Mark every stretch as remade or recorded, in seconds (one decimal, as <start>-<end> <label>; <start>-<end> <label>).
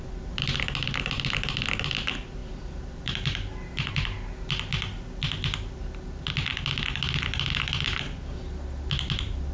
0.0-2.4 recorded; 2.4-3.9 remade; 3.9-9.5 recorded